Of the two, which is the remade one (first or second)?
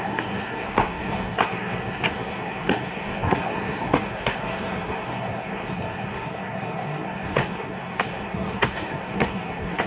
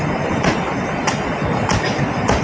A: first